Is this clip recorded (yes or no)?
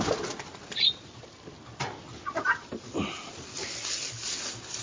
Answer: yes